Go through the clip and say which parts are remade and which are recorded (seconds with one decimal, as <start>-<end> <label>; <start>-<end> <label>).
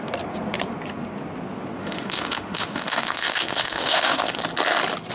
0.0-1.8 recorded; 1.8-4.4 remade; 4.4-5.1 recorded